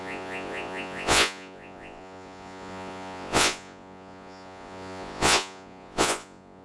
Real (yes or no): no